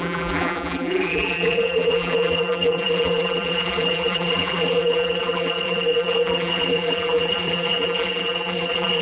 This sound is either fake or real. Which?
fake